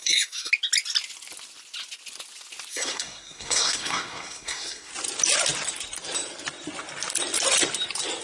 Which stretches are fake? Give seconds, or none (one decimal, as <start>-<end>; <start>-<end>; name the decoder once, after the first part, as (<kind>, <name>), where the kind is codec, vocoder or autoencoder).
0.0-0.5 (codec, SNAC); 2.7-4.9